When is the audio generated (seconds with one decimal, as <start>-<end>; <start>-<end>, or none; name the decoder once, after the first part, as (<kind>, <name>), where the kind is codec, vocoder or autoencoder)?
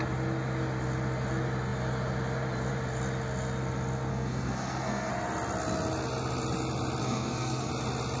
4.1-5.1 (codec, SNAC); 7.0-7.7